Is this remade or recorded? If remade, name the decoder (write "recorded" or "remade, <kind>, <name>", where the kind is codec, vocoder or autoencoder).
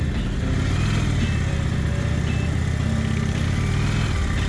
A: recorded